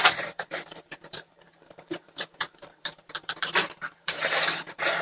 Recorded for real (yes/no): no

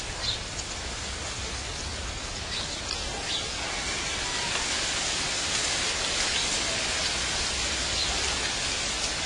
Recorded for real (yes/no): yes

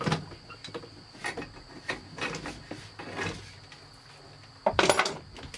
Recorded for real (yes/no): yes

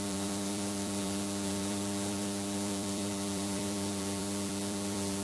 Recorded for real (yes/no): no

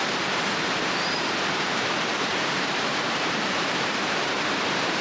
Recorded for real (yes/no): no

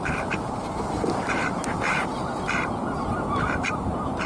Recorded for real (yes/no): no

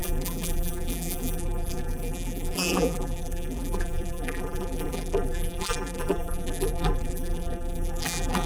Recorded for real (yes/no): no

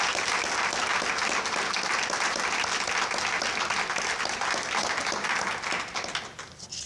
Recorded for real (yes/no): yes